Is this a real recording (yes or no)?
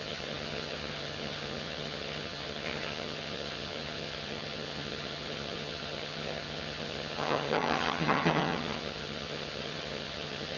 no